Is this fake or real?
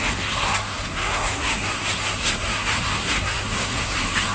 fake